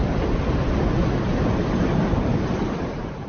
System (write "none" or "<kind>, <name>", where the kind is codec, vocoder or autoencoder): none